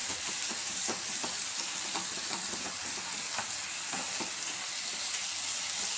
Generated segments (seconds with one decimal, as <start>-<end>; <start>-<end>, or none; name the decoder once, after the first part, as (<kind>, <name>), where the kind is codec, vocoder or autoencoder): 0.0-2.9 (vocoder, BigVGAN v2)